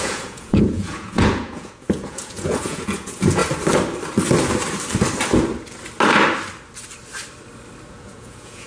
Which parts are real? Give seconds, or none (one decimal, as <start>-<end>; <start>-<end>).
3.4-7.9